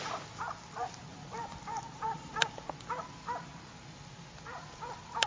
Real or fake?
real